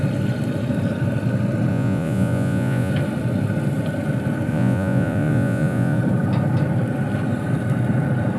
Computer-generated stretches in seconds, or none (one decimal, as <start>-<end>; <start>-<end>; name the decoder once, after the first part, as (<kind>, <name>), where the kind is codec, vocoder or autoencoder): 1.7-2.9 (vocoder, Vocos); 4.5-6.0